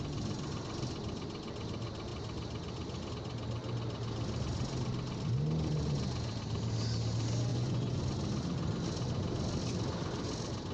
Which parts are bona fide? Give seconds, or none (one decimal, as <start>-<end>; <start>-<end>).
0.0-7.5; 8.0-10.7